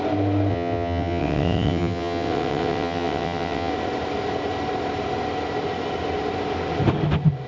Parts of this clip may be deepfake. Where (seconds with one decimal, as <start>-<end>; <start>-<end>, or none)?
0.5-3.7